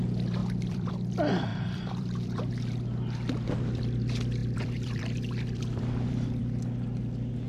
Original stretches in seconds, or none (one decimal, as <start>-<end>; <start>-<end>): 0.0-0.4; 0.9-1.5; 2.5-4.4; 6.4-7.5